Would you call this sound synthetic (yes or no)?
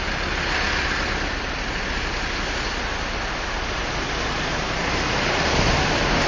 no